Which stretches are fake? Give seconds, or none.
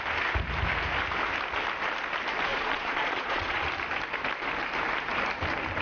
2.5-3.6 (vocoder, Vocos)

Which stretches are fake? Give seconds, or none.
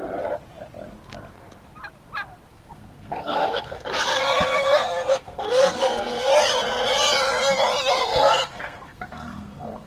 2.5-4.2 (codec, SNAC); 5.1-6.3; 7.9-9.9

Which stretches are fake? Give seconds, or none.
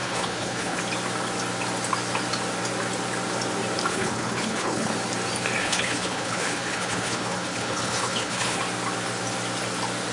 0.0-0.8 (codec, HILCodec); 3.9-4.9; 5.6-8.6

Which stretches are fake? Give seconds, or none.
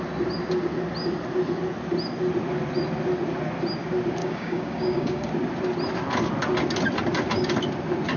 4.2-5.3 (codec, DAC)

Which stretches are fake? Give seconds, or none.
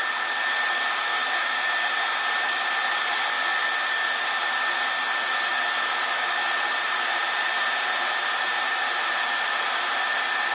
1.2-3.6 (vocoder, BigVGAN v2); 6.7-9.9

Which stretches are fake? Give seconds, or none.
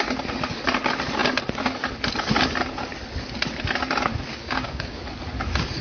4.3-5.0 (codec, DAC)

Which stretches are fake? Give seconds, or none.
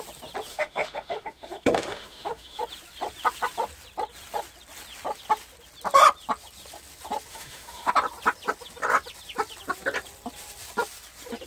0.5-2.6 (autoencoder, DAC-VAE); 7.3-7.9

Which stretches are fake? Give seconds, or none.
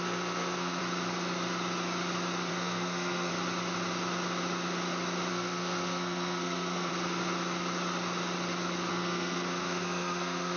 0.0-0.8 (codec, SNAC); 2.5-3.3; 5.3-6.9; 8.9-10.6